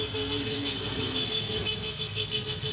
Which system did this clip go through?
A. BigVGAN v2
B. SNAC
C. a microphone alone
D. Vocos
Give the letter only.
B